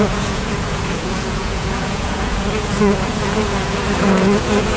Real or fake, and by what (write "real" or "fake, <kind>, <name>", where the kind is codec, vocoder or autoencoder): fake, vocoder, Vocos